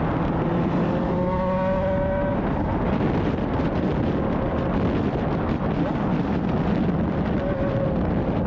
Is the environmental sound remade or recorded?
recorded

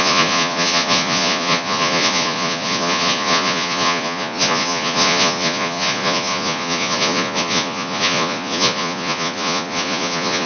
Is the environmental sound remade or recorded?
remade